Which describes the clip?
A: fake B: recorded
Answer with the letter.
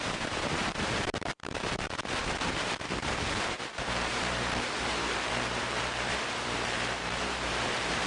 A